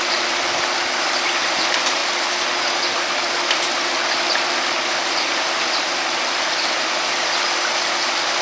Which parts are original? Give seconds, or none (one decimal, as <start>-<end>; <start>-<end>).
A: 0.0-8.4